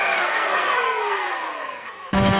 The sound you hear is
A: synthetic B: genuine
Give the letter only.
A